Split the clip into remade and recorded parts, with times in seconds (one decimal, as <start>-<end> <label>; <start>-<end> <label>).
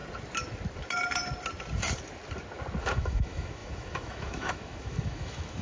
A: 0.0-2.8 recorded; 2.8-5.6 remade